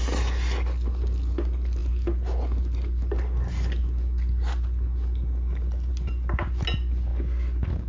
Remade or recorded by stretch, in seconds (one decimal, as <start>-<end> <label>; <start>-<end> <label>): 0.0-7.9 recorded